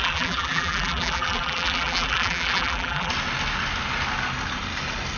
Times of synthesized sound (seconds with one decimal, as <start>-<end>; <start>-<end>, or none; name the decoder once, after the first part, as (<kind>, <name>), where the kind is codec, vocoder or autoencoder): 0.0-3.1 (vocoder, BigVGAN v2)